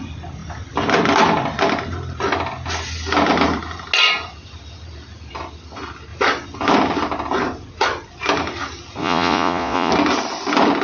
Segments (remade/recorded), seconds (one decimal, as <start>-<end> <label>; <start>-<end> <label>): 0.0-9.0 recorded; 9.0-9.9 remade; 9.9-10.8 recorded